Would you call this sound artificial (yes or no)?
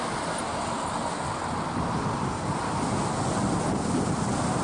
no